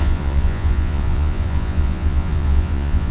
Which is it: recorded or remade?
remade